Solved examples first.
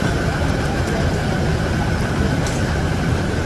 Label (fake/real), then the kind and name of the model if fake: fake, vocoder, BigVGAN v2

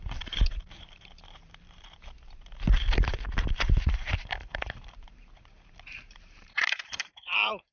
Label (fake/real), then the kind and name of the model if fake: fake, vocoder, BigVGAN v2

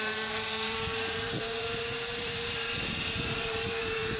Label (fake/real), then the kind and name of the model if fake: fake, vocoder, BigVGAN v2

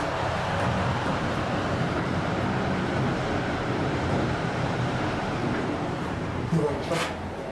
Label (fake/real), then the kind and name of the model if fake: fake, vocoder, BigVGAN v2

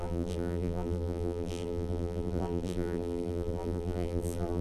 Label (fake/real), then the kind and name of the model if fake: fake, vocoder, BigVGAN v2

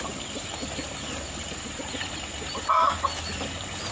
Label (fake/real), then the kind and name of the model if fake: real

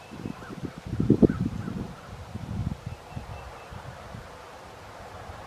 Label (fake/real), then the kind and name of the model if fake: fake, vocoder, BigVGAN v2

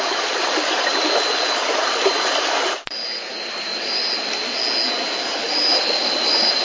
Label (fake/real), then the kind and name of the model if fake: real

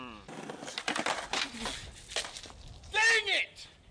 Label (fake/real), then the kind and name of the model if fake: real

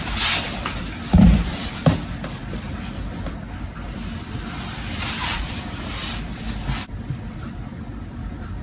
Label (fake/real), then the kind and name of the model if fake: fake, vocoder, BigVGAN v2